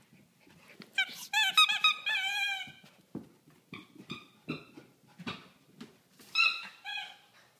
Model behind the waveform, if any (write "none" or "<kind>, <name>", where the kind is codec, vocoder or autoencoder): none